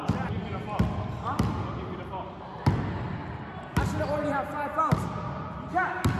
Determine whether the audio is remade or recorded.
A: recorded